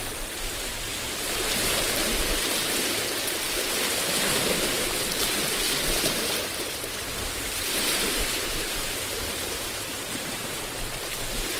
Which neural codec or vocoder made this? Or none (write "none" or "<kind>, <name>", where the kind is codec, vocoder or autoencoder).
vocoder, BigVGAN v2